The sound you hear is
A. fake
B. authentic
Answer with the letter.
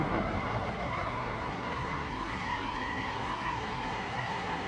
A